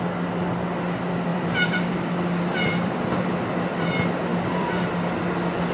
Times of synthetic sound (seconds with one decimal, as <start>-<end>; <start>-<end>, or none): 1.3-3.9; 4.3-5.2